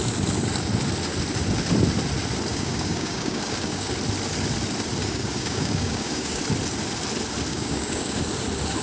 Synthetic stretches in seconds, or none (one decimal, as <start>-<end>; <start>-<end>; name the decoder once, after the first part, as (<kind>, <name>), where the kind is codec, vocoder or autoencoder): 2.5-3.9 (codec, DAC); 5.0-6.4; 7.5-8.2